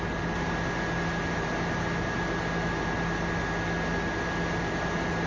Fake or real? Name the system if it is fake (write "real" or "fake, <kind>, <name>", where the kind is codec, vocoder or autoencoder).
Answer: real